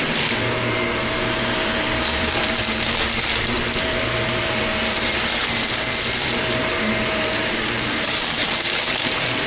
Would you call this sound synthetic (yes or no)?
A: yes